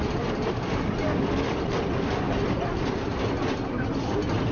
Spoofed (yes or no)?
no